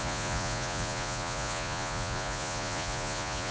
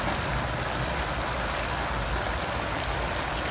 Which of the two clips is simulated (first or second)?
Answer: first